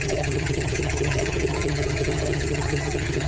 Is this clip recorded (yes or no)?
no